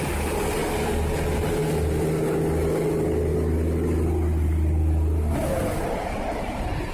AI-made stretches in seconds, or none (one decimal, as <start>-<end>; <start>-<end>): none